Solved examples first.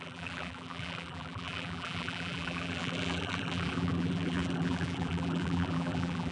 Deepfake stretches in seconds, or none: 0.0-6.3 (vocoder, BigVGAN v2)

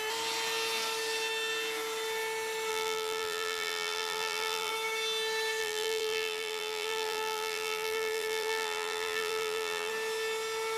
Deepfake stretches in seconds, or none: 2.7-4.7 (vocoder, BigVGAN v2); 5.6-9.9